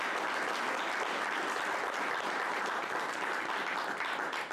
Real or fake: real